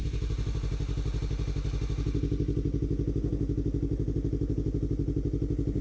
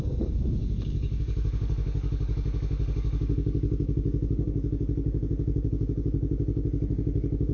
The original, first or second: first